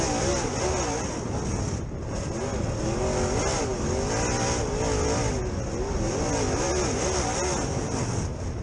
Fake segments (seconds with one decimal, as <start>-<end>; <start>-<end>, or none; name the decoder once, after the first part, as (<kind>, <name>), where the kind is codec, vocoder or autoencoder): none